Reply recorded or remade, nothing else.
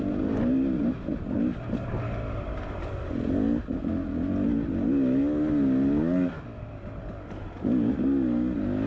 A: recorded